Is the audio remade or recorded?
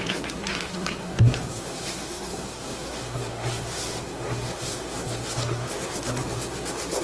remade